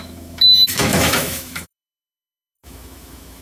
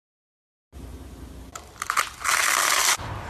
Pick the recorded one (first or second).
second